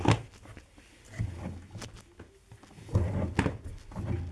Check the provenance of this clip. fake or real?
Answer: real